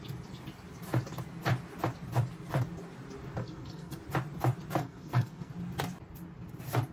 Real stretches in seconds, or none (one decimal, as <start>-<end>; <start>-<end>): 0.0-3.4; 4.0-4.8; 5.5-6.9